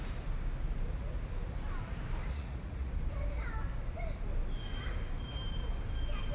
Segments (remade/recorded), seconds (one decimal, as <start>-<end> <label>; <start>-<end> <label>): 0.0-2.2 recorded; 2.2-2.9 remade; 2.9-6.3 recorded